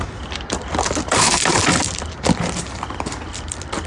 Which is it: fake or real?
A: fake